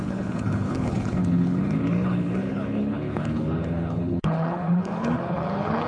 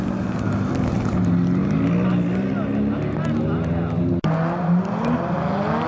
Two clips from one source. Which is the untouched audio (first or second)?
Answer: second